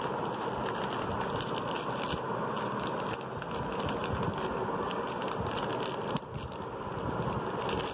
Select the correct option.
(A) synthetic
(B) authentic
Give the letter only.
B